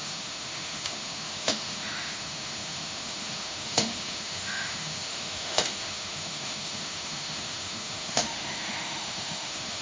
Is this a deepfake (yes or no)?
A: yes